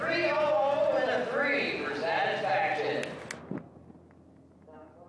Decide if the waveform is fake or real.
real